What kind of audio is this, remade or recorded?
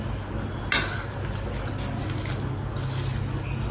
recorded